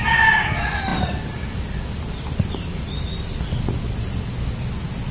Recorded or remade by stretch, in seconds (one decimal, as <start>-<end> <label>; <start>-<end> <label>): 0.0-5.1 recorded